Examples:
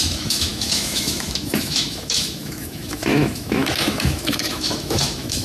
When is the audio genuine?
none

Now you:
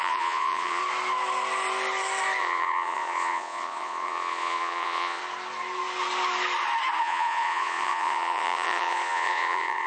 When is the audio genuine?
0.8-2.4; 5.2-7.0

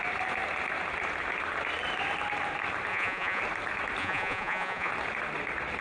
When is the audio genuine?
0.0-2.9; 3.4-4.0; 4.9-5.8

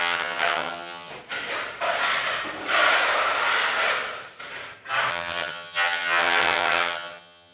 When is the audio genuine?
1.1-5.1

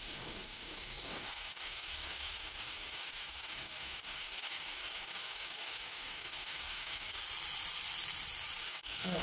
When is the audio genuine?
7.2-8.6

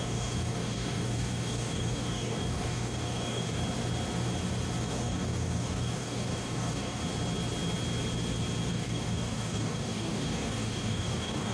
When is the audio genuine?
3.6-4.8; 7.0-8.7

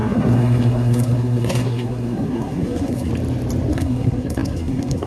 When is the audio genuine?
3.1-3.7

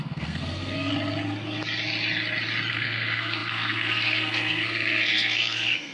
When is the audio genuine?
0.9-2.7